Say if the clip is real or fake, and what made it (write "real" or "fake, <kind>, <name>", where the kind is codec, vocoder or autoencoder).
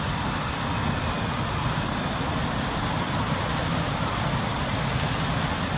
real